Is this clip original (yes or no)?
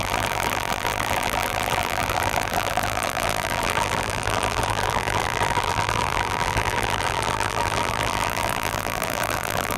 no